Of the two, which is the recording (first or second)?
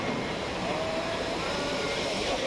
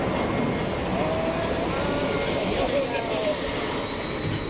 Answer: second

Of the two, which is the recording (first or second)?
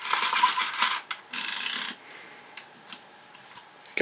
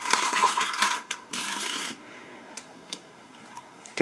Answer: first